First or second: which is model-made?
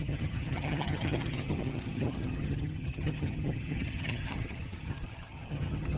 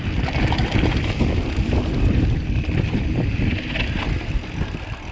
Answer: first